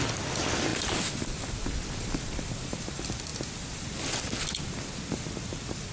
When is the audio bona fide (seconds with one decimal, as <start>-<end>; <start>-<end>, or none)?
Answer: 0.0-5.9